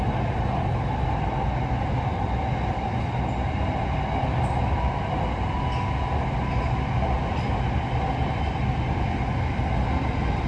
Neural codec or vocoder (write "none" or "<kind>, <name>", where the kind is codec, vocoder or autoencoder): none